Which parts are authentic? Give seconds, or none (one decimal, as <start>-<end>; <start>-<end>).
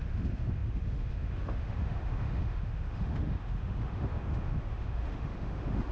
none